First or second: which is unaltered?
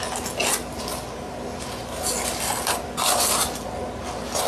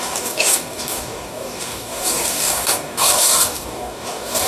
first